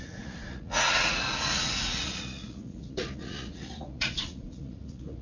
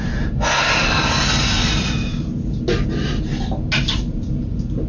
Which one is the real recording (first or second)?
second